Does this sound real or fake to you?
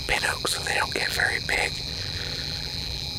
fake